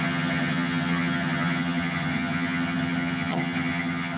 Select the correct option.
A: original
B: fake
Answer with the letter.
B